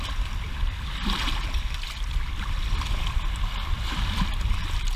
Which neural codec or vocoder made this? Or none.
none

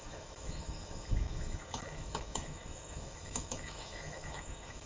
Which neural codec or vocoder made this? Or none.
autoencoder, DAC-VAE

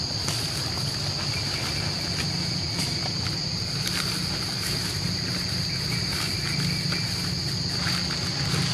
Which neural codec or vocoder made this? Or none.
none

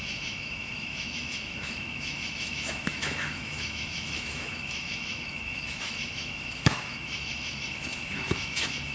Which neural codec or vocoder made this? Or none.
autoencoder, DAC-VAE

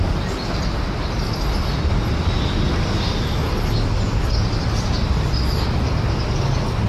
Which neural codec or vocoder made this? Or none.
none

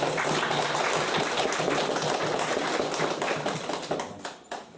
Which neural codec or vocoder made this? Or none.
none